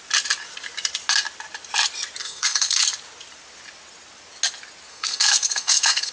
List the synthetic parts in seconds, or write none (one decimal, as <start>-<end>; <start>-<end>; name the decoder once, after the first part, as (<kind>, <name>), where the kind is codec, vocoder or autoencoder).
2.2-2.8 (codec, SNAC); 4.9-6.1